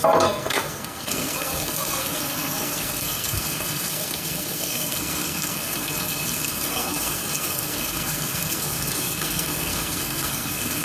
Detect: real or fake fake